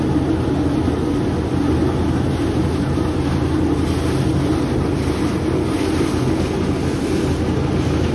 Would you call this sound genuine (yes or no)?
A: yes